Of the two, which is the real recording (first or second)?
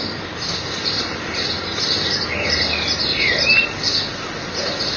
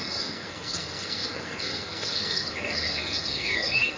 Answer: first